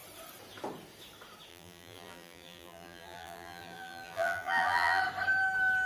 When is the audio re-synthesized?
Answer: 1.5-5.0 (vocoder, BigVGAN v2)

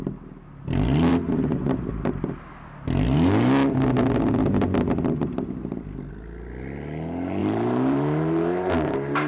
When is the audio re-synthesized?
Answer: 1.1-2.3 (vocoder, BigVGAN v2); 7.4-8.7

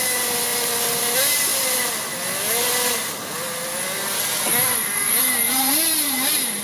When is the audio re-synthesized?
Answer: none

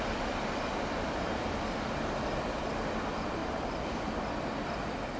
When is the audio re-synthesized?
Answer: none

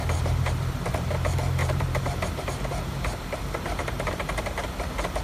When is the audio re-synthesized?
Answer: 0.0-1.1 (vocoder, BigVGAN v2); 1.6-4.7